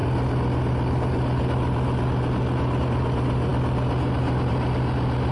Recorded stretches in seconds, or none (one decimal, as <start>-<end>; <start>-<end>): 0.0-5.3